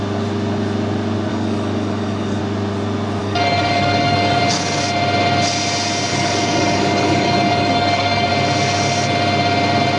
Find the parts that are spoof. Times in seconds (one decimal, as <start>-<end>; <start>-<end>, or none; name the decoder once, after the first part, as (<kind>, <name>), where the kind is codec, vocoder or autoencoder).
1.3-2.4 (codec, DAC); 3.2-4.4; 6.1-8.3